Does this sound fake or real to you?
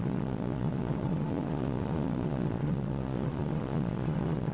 fake